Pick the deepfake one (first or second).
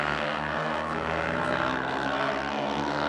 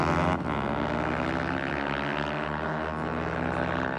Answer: first